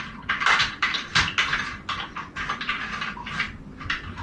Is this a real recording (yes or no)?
yes